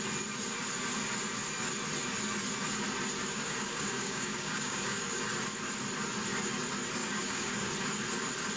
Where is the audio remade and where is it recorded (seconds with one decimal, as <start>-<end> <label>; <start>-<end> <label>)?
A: 0.0-3.2 recorded; 3.2-5.2 remade; 5.2-7.0 recorded; 7.0-7.7 remade; 7.7-8.6 recorded

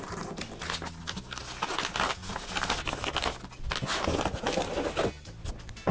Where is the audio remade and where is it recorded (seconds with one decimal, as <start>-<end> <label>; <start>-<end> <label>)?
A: 0.0-5.9 recorded

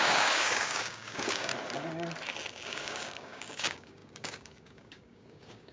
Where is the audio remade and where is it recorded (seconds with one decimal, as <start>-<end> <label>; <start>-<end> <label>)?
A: 0.0-1.5 remade; 1.5-2.5 recorded; 2.5-5.7 remade

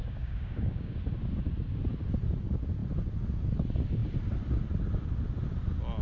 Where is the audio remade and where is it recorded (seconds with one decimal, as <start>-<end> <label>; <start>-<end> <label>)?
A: 0.0-1.0 remade; 1.0-6.0 recorded

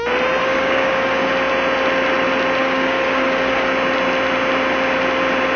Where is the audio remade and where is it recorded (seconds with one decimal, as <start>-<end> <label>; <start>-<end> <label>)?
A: 0.0-0.4 recorded; 0.4-1.3 remade; 1.3-2.6 recorded; 2.6-3.7 remade; 3.7-5.6 recorded

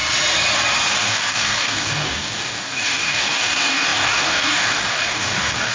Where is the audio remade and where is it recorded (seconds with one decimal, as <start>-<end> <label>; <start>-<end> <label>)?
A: 0.0-1.0 recorded; 1.0-5.7 remade

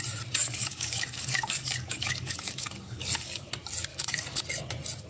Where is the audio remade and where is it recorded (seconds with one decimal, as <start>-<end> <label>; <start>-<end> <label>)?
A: 0.0-0.4 recorded; 0.4-3.5 remade; 3.5-3.9 recorded; 3.9-4.4 remade; 4.4-5.1 recorded